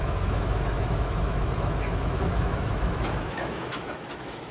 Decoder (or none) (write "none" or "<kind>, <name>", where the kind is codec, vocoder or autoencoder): autoencoder, DAC-VAE